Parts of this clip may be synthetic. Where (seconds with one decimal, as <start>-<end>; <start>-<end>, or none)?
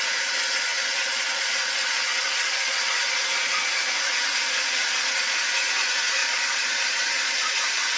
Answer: 0.0-8.0